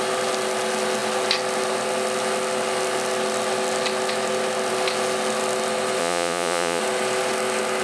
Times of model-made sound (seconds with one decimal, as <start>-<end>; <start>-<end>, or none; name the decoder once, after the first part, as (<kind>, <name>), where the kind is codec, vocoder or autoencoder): 6.0-6.8 (vocoder, Vocos)